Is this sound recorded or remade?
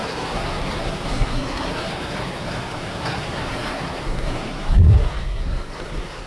remade